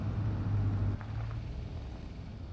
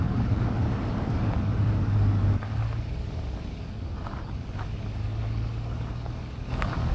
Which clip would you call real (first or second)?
first